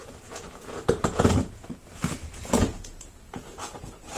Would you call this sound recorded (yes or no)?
no